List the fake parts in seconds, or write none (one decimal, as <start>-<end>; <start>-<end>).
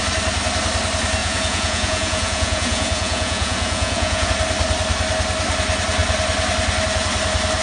1.2-4.3